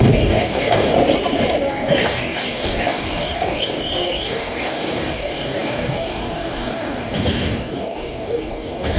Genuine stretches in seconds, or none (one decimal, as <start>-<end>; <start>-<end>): 0.9-1.7